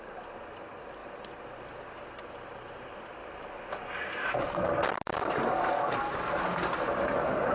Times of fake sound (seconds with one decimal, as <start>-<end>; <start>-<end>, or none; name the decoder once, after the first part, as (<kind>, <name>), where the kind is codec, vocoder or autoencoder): none